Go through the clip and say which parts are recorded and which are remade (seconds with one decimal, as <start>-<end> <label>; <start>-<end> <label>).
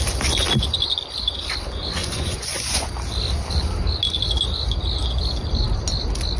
0.0-2.0 recorded; 2.0-2.9 remade; 2.9-6.4 recorded